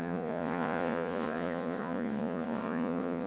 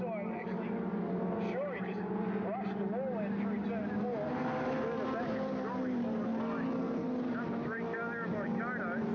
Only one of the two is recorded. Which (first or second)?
second